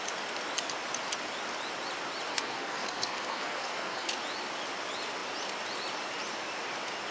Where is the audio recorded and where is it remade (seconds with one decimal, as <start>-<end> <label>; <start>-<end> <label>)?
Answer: 0.0-2.3 recorded; 2.3-4.1 remade; 4.1-7.1 recorded